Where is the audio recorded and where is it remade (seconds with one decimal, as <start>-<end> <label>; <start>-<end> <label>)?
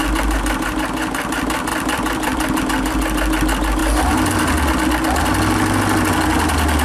0.0-1.7 recorded; 1.7-2.6 remade; 2.6-3.8 recorded; 3.8-4.3 remade; 4.3-6.8 recorded